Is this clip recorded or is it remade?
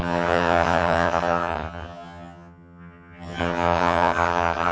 remade